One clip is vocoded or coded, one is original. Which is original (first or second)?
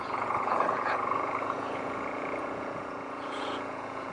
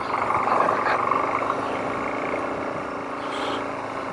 second